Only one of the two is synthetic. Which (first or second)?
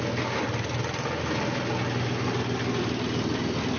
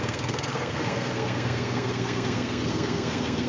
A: second